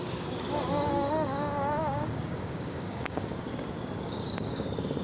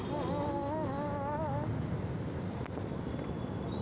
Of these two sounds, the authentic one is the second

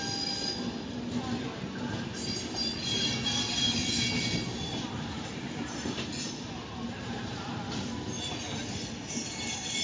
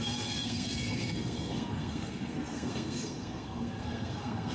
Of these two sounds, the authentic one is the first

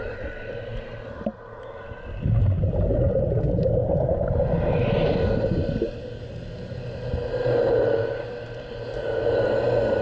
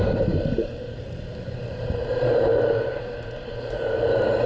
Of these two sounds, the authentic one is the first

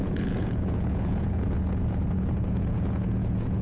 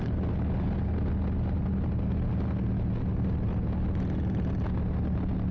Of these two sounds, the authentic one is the second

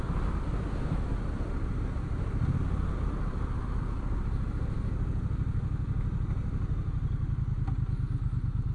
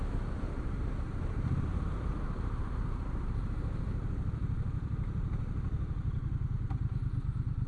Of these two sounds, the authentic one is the first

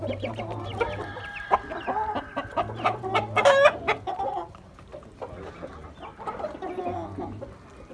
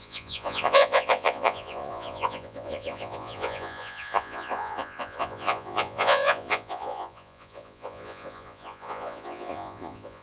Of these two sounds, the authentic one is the first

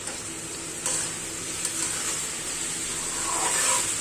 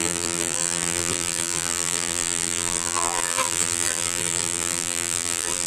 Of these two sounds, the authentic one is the first